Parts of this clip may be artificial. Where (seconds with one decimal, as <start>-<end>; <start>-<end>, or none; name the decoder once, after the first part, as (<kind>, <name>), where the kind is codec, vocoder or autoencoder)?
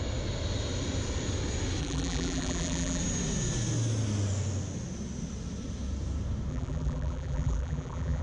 1.8-3.0 (vocoder, BigVGAN v2); 6.5-8.2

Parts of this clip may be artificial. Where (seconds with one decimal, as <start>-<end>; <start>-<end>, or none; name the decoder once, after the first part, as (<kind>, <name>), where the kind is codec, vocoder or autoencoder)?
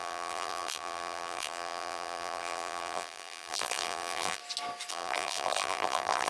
0.0-4.4 (vocoder, BigVGAN v2); 4.9-6.3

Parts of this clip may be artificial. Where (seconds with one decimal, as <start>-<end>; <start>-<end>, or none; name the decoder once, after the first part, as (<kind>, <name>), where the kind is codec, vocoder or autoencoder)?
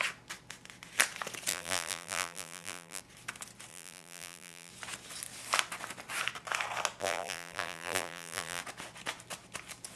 1.5-3.0 (vocoder, BigVGAN v2); 3.7-4.7; 7.0-8.6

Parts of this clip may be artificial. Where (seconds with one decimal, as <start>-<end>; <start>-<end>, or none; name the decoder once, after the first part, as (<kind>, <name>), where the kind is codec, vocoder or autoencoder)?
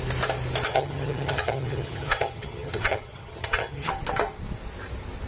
0.7-3.9 (vocoder, HiFi-GAN)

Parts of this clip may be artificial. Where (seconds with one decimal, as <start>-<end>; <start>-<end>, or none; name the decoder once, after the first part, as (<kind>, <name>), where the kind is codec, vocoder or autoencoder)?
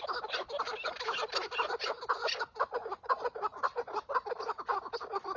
none